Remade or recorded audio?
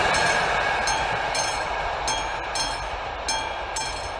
recorded